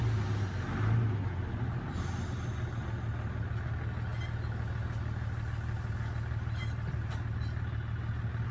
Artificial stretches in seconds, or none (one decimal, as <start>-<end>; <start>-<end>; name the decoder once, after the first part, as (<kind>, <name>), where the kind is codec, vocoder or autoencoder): none